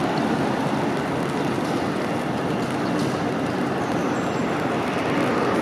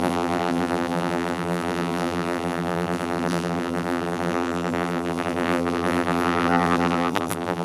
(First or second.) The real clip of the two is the first